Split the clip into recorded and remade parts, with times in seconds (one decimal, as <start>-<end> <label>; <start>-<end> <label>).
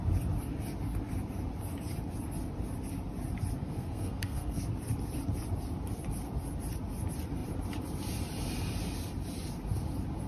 0.0-3.6 recorded; 3.6-4.6 remade; 4.6-10.3 recorded